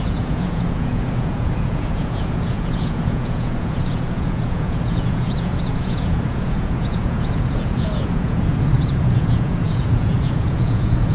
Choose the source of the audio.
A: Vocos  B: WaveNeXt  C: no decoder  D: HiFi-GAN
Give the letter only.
A